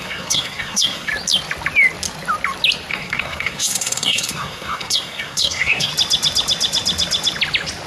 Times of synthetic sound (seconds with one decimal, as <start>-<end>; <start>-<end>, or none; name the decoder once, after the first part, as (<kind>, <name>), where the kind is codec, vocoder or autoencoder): 0.0-1.1 (codec, SNAC); 2.9-5.9